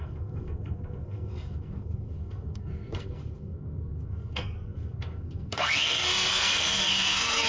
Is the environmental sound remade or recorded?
remade